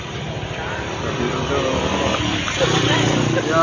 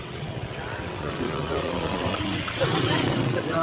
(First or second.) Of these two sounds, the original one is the first